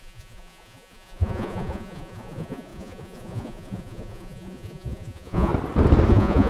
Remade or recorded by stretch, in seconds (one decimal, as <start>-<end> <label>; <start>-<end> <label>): 0.0-5.5 remade; 5.5-6.1 recorded; 6.1-6.5 remade